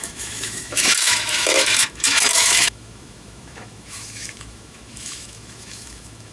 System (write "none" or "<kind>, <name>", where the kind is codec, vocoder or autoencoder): autoencoder, DAC-VAE